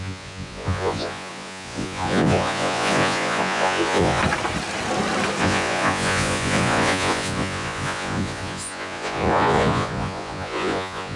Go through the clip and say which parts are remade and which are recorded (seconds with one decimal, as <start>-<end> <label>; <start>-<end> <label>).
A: 0.0-4.2 remade; 4.2-5.4 recorded; 5.4-11.2 remade